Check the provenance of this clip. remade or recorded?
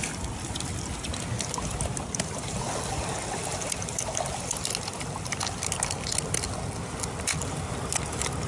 recorded